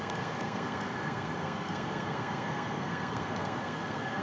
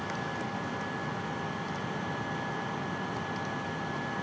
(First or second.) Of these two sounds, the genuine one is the second